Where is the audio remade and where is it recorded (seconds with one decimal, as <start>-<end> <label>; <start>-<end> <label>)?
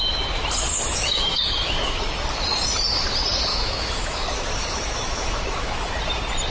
0.0-0.7 recorded; 0.7-2.0 remade; 2.0-3.5 recorded; 3.5-6.0 remade; 6.0-6.5 recorded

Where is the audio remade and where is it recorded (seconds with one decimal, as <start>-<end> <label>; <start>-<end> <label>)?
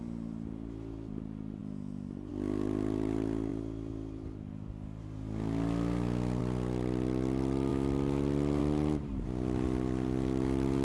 0.0-10.8 recorded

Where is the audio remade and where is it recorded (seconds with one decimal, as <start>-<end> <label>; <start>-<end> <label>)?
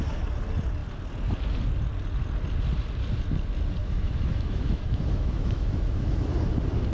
0.0-3.8 recorded; 3.8-6.3 remade; 6.3-6.9 recorded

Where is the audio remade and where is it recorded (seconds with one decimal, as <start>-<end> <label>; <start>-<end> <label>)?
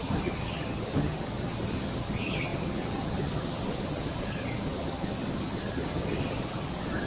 0.0-7.1 remade